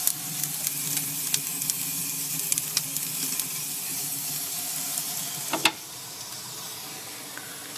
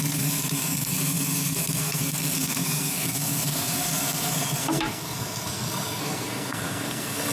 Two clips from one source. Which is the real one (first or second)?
first